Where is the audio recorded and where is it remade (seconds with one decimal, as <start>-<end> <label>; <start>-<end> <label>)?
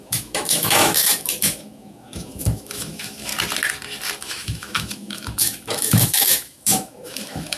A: 0.0-3.3 remade; 3.3-4.2 recorded; 4.2-7.6 remade